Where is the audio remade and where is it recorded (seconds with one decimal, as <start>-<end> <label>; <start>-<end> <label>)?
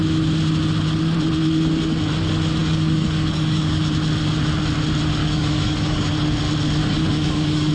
0.0-2.6 recorded; 2.6-3.9 remade; 3.9-5.2 recorded; 5.2-6.1 remade; 6.1-6.8 recorded; 6.8-7.7 remade